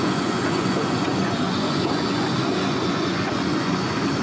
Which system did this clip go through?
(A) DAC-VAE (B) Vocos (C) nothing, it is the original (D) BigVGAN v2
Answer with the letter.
B